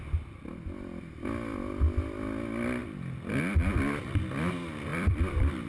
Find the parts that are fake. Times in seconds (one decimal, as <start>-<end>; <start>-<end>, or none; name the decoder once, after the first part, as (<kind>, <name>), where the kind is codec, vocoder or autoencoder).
2.8-3.3 (vocoder, BigVGAN v2); 4.9-5.7